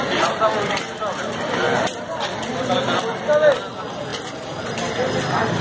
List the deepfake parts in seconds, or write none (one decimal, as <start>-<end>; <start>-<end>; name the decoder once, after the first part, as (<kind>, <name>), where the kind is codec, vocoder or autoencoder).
none